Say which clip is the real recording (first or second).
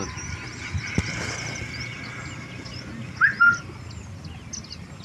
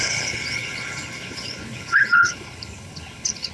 first